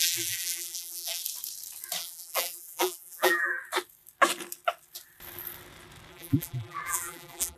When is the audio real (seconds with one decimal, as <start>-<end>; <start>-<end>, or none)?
1.2-2.0; 3.6-6.1